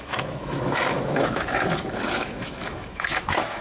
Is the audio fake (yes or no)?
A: yes